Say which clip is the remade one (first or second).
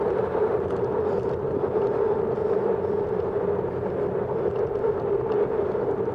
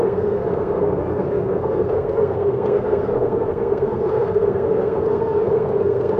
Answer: second